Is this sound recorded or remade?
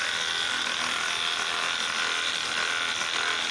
recorded